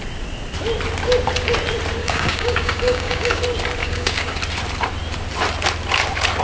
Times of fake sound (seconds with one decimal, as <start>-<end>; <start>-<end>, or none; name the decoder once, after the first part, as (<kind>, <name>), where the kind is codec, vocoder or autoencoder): 2.0-3.4 (codec, DAC); 3.8-4.4